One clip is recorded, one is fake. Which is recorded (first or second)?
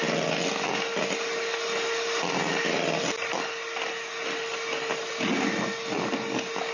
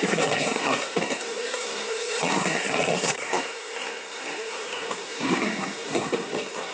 first